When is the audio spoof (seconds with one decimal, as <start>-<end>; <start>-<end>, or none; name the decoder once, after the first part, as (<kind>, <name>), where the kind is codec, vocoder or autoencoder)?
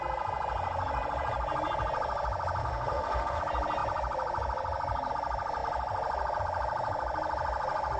2.6-3.4 (autoencoder, DAC-VAE)